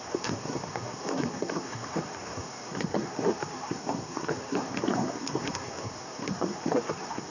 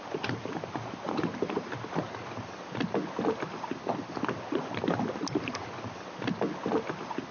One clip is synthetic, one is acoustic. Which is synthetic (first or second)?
first